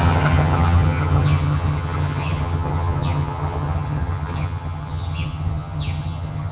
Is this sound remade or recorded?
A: remade